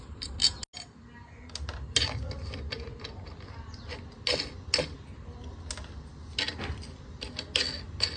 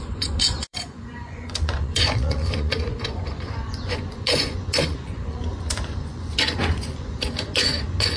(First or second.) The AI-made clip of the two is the second